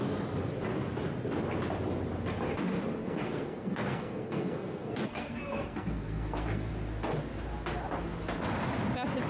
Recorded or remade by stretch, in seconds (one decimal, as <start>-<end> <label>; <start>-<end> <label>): 0.0-3.0 recorded; 3.0-6.7 remade; 6.7-9.3 recorded